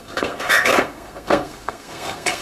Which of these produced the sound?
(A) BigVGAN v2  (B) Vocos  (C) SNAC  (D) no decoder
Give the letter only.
C